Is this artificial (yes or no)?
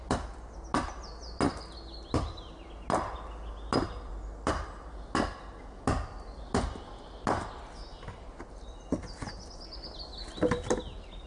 no